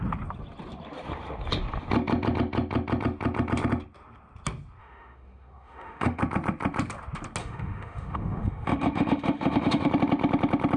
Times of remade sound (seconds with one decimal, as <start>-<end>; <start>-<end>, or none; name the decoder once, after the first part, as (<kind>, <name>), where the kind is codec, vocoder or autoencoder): 4.8-6.2 (autoencoder, DAC-VAE); 7.4-9.9